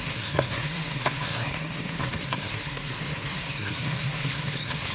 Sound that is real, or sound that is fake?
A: fake